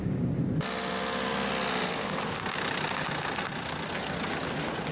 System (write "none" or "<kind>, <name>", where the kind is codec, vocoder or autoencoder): none